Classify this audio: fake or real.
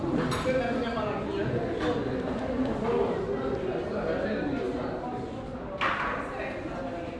real